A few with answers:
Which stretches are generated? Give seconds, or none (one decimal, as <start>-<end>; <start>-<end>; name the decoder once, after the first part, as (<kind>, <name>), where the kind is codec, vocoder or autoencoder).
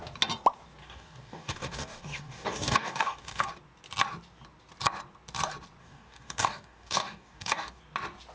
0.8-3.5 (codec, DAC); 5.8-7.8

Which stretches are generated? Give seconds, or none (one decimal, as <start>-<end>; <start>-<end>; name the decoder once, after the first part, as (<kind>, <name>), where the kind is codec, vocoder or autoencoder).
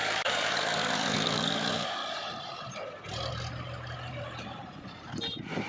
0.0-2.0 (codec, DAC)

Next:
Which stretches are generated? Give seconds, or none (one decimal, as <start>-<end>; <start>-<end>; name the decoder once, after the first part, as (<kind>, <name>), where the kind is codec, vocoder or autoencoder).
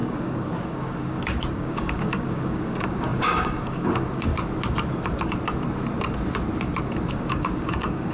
0.0-4.3 (codec, DAC); 7.1-8.1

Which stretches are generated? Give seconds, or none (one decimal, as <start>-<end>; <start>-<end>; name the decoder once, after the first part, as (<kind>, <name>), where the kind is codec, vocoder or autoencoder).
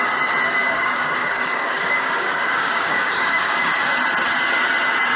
0.6-3.7 (codec, DAC)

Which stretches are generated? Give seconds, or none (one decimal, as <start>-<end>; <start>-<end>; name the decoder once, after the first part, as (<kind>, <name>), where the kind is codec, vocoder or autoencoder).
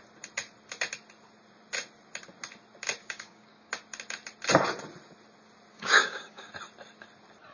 3.0-3.7 (codec, DAC); 5.7-6.5